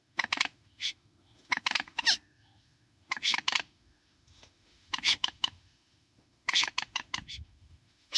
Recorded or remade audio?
remade